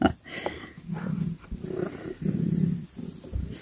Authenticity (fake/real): real